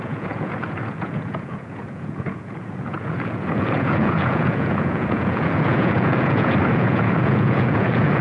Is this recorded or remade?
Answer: remade